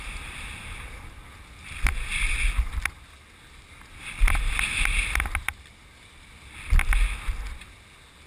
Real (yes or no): yes